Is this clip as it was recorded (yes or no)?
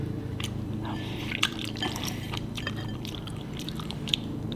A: no